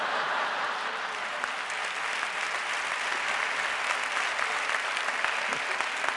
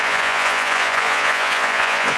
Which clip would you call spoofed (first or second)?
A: second